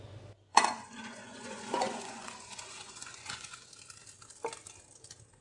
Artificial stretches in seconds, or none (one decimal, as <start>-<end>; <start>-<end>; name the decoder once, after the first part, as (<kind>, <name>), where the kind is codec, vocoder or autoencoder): 0.5-3.7 (vocoder, Vocos)